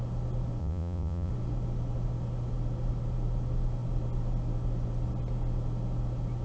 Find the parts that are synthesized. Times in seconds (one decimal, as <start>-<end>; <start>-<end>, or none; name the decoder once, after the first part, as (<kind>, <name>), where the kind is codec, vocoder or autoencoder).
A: 0.6-1.3 (vocoder, Vocos)